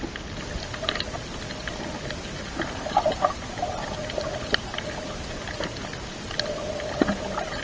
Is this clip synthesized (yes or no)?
no